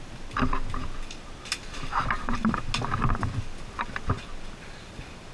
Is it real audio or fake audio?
real